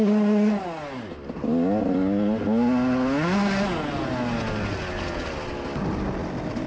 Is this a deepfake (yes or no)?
no